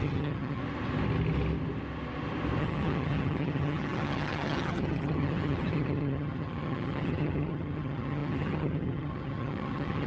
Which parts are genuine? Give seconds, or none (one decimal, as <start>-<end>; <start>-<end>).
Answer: 0.6-2.6